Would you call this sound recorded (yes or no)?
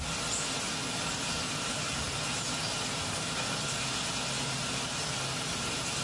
yes